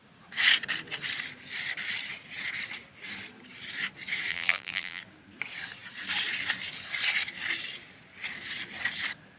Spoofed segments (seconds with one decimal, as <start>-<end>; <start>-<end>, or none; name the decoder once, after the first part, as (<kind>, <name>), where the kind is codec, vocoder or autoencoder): 4.3-5.0 (vocoder, BigVGAN v2)